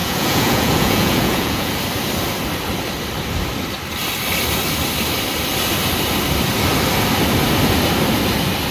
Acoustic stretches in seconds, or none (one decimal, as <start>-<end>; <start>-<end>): 1.7-8.7